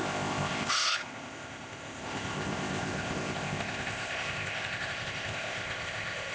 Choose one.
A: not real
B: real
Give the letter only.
A